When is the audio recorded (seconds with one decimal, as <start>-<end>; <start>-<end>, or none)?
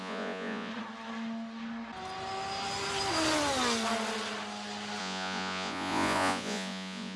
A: 0.7-5.0